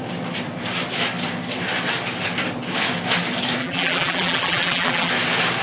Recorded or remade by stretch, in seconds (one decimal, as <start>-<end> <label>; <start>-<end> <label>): 0.0-3.6 recorded; 3.6-5.1 remade; 5.1-5.6 recorded